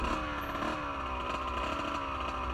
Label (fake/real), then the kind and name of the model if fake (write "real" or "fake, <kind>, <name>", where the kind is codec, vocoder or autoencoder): real